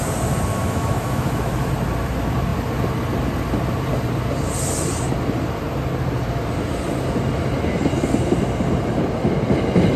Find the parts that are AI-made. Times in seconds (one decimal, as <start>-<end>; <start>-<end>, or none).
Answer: 0.5-1.7